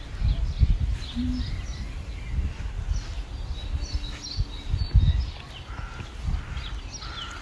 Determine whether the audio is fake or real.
real